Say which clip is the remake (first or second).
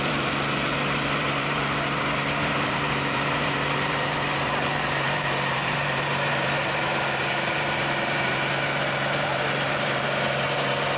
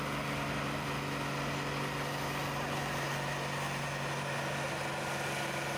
first